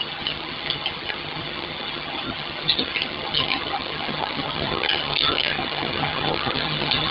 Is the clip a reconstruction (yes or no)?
yes